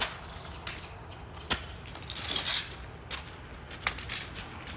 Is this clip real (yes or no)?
yes